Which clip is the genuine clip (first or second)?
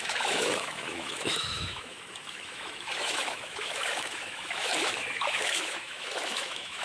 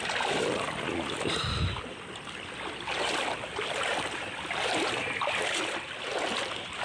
second